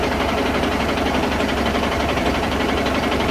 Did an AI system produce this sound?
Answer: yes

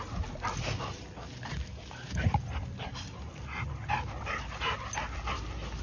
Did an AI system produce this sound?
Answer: no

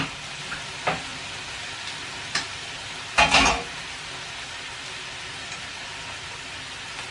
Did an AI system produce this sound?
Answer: no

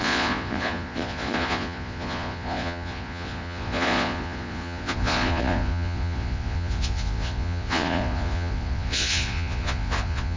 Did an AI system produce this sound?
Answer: yes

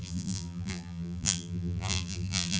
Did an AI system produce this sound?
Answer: yes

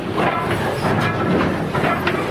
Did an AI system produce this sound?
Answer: no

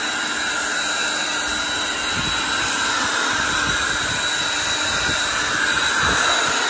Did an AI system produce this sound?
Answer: no